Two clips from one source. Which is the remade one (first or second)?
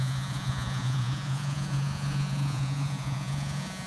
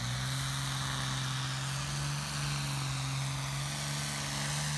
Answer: first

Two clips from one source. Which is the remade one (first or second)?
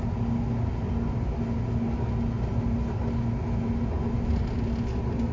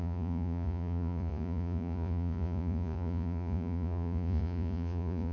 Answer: second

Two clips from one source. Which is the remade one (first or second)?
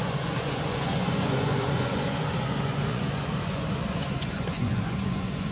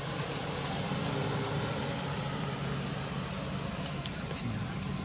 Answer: first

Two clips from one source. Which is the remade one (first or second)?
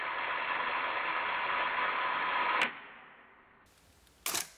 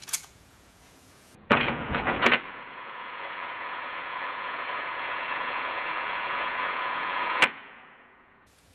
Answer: second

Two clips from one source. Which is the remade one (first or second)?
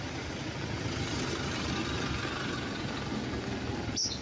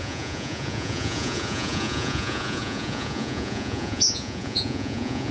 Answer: second